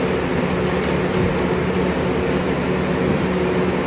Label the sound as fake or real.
fake